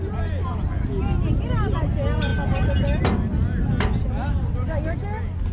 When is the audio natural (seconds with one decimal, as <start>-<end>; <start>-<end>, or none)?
0.0-5.5